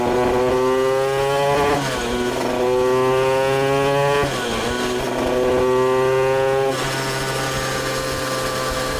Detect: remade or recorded recorded